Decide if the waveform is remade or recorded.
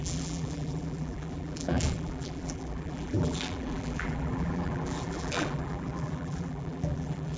remade